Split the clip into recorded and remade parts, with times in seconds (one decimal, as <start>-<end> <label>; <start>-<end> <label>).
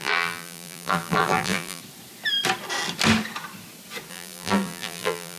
0.0-1.8 remade; 1.8-4.1 recorded; 4.1-5.4 remade